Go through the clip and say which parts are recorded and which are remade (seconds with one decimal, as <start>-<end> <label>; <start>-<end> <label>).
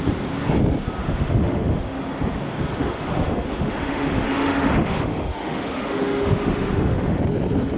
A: 0.0-1.0 recorded; 1.0-2.0 remade; 2.0-2.8 recorded; 2.8-7.2 remade; 7.2-7.8 recorded